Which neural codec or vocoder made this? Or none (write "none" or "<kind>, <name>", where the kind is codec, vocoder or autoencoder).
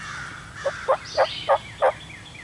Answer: none